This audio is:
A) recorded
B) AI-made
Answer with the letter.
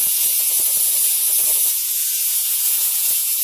B